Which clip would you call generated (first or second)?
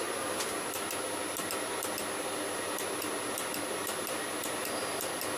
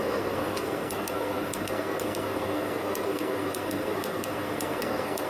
second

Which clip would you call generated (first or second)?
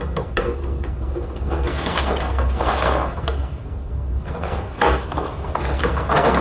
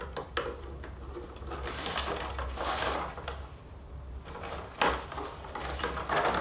first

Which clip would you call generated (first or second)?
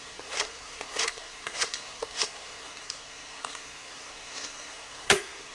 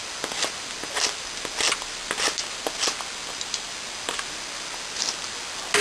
first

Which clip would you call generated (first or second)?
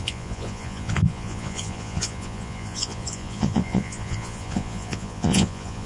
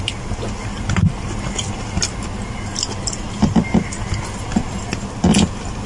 first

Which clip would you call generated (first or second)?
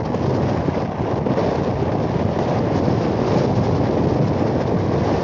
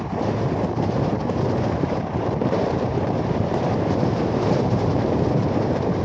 second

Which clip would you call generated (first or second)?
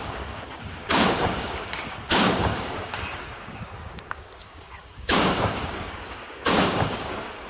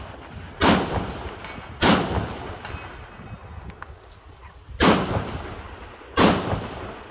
first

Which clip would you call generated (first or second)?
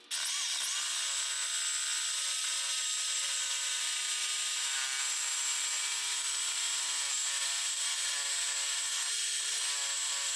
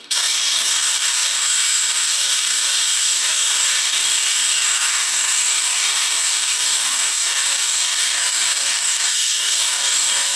second